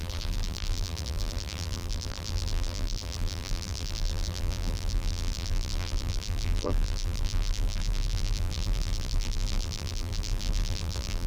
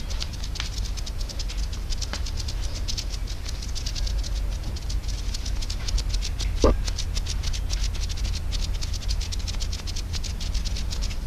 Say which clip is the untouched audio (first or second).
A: second